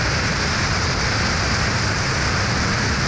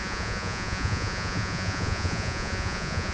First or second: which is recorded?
first